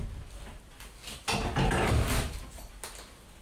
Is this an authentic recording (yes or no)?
yes